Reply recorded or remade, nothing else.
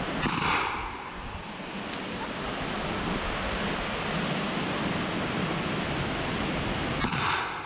recorded